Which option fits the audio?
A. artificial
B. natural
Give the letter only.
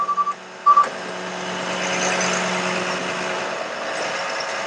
B